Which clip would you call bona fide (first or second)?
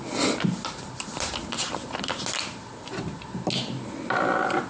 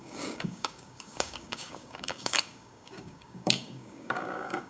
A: first